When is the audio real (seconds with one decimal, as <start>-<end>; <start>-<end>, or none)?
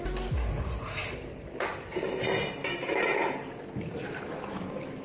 0.0-5.0